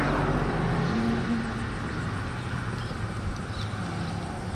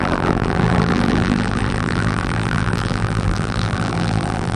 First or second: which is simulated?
second